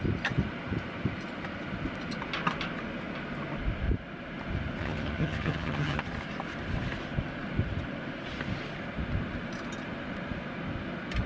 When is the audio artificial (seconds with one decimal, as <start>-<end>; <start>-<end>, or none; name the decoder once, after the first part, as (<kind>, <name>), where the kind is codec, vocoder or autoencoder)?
4.8-6.0 (vocoder, HiFi-GAN)